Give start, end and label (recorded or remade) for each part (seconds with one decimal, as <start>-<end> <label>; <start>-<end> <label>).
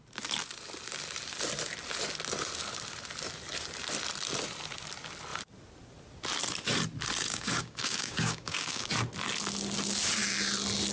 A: 0.0-7.3 recorded; 7.3-8.9 remade; 8.9-10.9 recorded